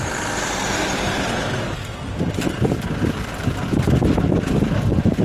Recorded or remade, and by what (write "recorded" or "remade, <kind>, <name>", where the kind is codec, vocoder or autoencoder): recorded